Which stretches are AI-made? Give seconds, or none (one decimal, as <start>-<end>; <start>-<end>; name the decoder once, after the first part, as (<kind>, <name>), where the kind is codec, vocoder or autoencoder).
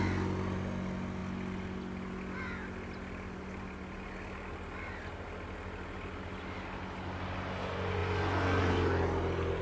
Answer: none